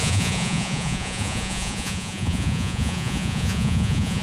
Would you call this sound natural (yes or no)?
no